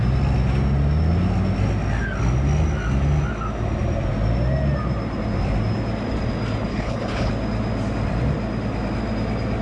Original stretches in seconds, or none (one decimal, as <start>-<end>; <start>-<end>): 0.0-6.7; 7.3-9.6